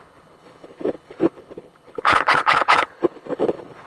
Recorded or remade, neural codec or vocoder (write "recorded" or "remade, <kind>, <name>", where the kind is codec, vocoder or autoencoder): remade, codec, HILCodec